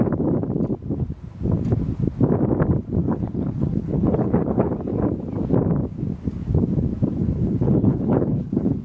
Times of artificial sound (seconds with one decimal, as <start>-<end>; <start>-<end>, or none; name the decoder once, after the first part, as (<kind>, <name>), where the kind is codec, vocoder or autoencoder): 3.0-4.7 (codec, HILCodec); 7.2-8.8